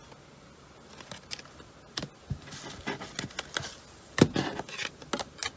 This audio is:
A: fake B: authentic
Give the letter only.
B